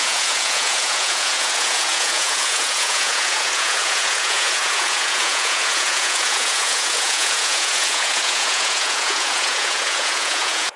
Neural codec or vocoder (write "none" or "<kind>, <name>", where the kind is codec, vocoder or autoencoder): vocoder, Vocos